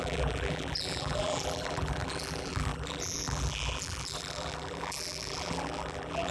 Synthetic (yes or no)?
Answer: yes